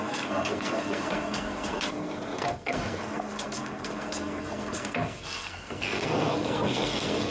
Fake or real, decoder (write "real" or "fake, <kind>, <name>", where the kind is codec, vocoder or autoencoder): fake, codec, SNAC